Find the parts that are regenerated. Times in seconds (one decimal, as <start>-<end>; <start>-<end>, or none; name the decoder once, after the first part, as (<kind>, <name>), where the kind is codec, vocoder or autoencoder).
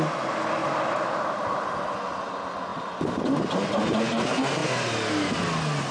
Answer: 0.6-1.7 (vocoder, BigVGAN v2)